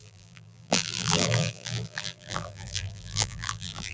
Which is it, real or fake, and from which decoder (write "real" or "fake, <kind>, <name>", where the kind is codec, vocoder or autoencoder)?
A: fake, vocoder, BigVGAN v2